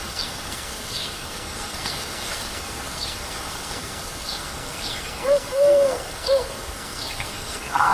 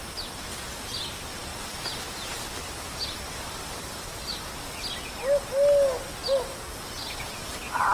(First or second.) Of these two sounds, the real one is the second